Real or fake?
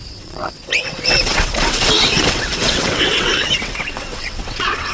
fake